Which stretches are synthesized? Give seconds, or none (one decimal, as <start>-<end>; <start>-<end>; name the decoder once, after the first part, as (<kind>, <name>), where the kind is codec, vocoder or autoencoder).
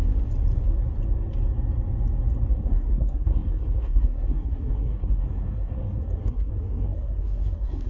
2.5-7.9 (codec, SNAC)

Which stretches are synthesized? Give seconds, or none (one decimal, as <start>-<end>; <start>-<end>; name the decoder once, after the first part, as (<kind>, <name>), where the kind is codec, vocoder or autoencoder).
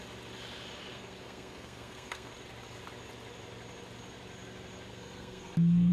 0.9-2.3 (codec, SNAC); 4.9-5.9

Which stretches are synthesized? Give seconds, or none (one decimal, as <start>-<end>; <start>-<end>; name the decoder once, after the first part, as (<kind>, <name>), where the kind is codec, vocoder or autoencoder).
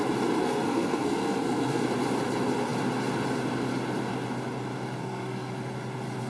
0.4-1.8 (codec, SNAC); 5.0-5.5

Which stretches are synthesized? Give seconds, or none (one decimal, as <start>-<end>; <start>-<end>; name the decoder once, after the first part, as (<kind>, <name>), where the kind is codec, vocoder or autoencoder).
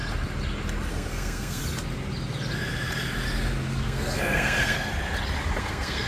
0.9-1.6 (codec, SNAC); 3.6-4.9; 5.6-6.1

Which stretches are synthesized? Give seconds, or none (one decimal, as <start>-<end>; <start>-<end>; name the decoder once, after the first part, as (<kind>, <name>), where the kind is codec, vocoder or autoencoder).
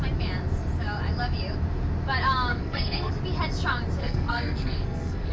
2.5-3.1 (codec, SNAC); 4.0-5.3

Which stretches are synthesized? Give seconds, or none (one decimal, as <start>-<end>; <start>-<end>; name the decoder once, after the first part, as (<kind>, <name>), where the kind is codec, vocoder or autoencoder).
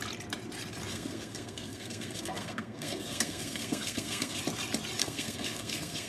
0.9-4.4 (codec, SNAC); 5.0-6.1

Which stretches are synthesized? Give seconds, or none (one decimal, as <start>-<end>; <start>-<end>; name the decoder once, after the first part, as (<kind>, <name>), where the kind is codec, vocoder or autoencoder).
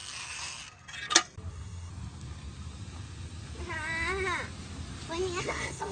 1.5-1.9 (codec, SNAC); 5.4-5.9